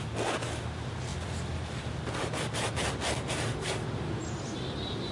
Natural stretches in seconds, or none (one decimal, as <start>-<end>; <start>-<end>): 0.0-5.1